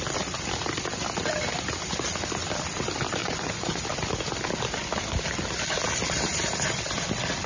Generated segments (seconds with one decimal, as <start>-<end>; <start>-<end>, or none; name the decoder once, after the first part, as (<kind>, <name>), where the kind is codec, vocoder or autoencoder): 3.2-3.8 (vocoder, Vocos)